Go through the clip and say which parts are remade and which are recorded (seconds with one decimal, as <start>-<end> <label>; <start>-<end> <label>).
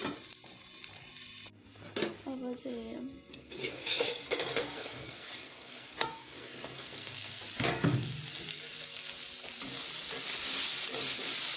0.0-3.3 recorded; 3.3-7.4 remade; 7.4-8.5 recorded; 8.5-9.1 remade; 9.1-11.6 recorded